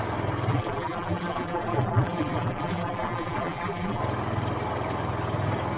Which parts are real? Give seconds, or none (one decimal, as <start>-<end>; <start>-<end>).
0.0-0.5; 4.0-5.8